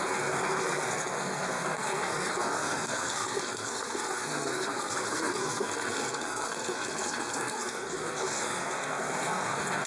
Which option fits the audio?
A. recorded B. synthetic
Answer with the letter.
B